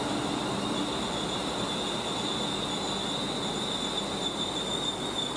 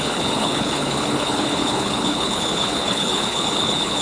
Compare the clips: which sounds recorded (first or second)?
first